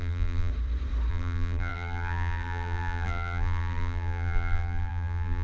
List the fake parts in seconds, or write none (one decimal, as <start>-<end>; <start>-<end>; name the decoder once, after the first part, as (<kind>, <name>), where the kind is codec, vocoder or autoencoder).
0.0-0.5 (vocoder, BigVGAN v2); 1.1-5.4

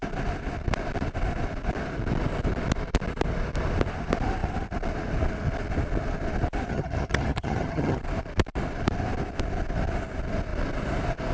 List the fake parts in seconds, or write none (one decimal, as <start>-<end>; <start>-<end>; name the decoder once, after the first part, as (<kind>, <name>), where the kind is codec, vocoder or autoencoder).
6.7-8.0 (vocoder, HiFi-GAN)